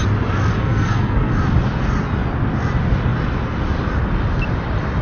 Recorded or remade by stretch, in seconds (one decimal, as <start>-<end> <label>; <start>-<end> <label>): 0.0-0.5 recorded; 0.5-1.3 remade; 1.3-5.0 recorded